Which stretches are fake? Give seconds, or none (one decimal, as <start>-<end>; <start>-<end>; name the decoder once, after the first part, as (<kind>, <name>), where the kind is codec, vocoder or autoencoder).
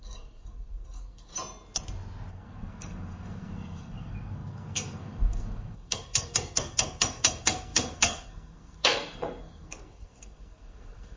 0.0-1.3 (codec, SNAC); 2.3-11.2